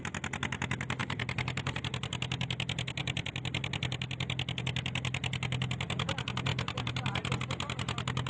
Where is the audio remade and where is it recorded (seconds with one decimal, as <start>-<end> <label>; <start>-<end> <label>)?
0.0-1.0 recorded; 1.0-1.8 remade; 1.8-6.5 recorded; 6.5-7.3 remade; 7.3-8.3 recorded